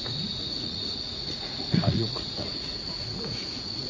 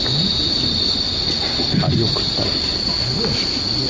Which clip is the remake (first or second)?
first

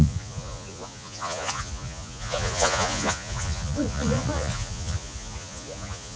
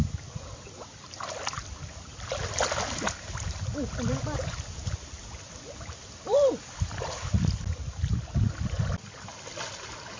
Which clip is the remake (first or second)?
first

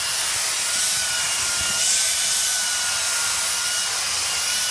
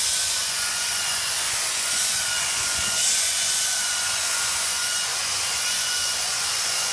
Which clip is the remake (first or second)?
second